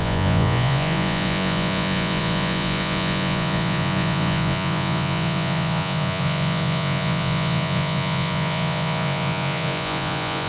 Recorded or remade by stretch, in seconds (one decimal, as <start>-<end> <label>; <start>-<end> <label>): 0.0-10.5 remade